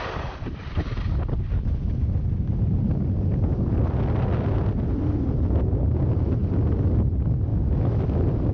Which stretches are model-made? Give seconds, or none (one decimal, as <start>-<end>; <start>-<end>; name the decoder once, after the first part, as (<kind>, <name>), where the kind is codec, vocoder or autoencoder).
7.5-8.0 (autoencoder, DAC-VAE)